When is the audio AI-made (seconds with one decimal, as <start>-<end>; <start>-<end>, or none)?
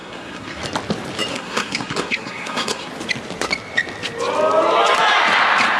0.0-0.6; 1.3-2.9